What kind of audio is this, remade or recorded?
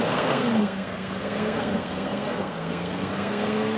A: remade